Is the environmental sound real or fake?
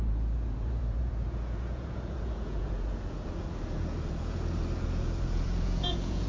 fake